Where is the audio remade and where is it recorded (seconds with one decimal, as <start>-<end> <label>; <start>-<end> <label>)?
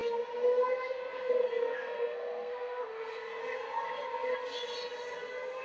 0.0-1.4 recorded; 1.4-3.4 remade; 3.4-5.6 recorded